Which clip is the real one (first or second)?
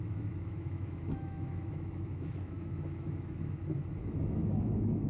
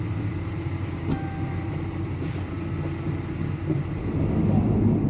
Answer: second